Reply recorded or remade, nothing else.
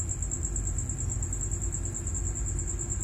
recorded